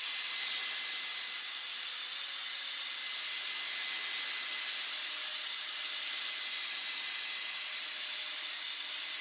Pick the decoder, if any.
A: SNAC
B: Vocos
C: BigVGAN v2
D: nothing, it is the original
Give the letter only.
D